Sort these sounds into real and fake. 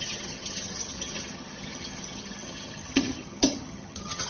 fake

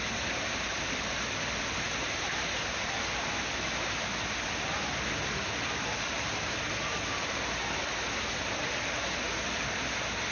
real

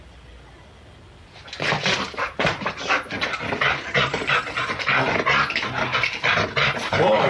real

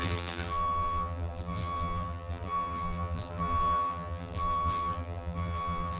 fake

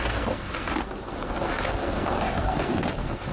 fake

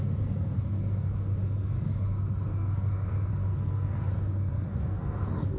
fake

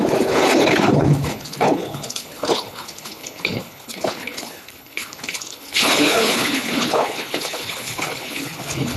fake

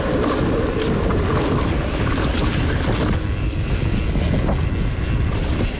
real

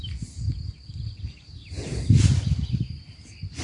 real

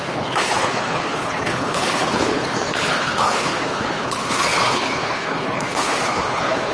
fake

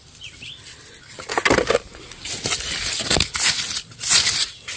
real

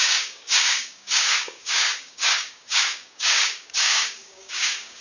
fake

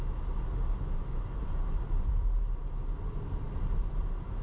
real